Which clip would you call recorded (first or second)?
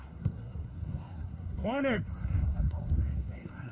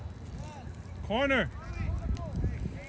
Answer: second